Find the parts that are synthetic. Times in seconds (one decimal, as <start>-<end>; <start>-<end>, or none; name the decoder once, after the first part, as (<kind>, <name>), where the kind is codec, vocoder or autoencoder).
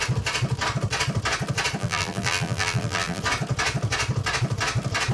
1.8-3.2 (vocoder, BigVGAN v2)